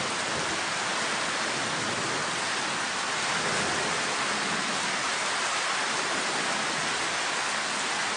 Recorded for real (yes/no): yes